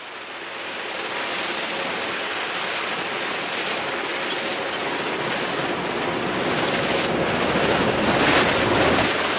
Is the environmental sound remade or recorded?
recorded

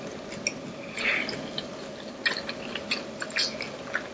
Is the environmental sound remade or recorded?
recorded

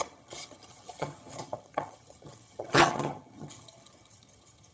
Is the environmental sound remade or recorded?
remade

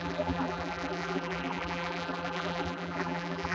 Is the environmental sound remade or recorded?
remade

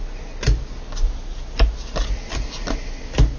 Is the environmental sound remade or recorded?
recorded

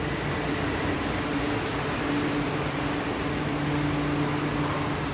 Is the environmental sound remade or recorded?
recorded